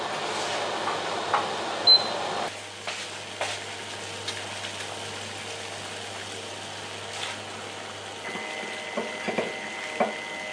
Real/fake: real